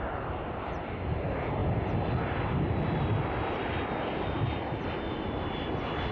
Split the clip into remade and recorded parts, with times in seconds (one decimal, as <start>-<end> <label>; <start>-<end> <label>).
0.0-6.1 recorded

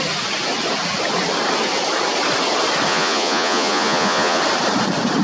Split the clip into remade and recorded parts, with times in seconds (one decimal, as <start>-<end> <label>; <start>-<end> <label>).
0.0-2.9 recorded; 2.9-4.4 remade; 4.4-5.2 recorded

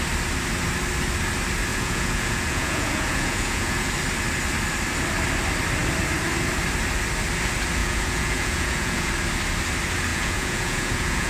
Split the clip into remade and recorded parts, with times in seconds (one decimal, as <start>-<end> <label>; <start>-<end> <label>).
0.0-1.7 recorded; 1.7-3.9 remade; 3.9-7.8 recorded; 7.8-9.1 remade; 9.1-10.1 recorded; 10.1-11.3 remade